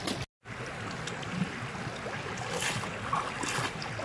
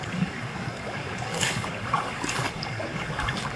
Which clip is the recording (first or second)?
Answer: first